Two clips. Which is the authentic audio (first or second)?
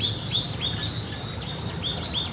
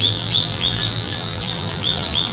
first